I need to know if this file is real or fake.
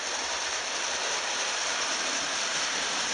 fake